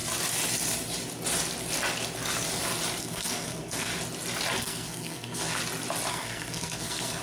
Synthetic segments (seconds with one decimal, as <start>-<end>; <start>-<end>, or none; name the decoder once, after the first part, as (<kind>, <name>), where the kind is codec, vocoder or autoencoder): 3.0-3.9 (codec, SNAC); 4.6-5.6; 6.1-7.2